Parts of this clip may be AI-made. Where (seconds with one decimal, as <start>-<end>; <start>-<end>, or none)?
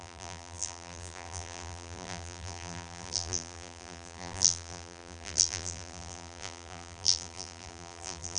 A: 0.0-8.4